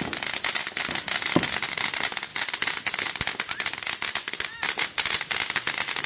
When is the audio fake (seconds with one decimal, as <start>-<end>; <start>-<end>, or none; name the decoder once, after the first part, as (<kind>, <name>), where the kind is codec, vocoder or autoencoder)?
none